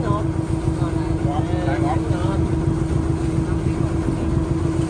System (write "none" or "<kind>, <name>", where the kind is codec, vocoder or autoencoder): none